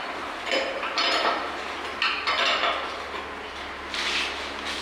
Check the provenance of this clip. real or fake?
real